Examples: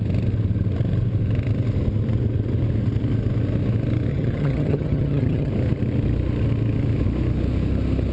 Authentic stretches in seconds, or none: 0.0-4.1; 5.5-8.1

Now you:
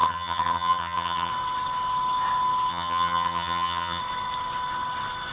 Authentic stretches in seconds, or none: 1.3-2.7; 4.0-5.3

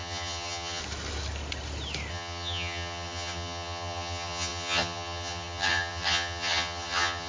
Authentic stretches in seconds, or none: 0.8-2.1

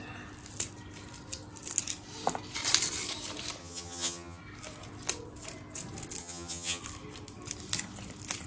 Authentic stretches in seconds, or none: 0.0-3.6; 4.4-6.2; 6.8-8.5

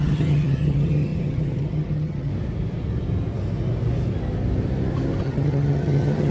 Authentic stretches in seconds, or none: 2.3-5.2